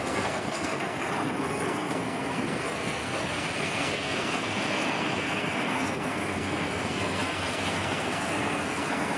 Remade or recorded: remade